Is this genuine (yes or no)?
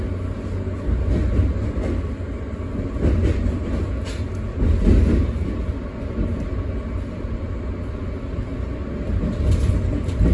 yes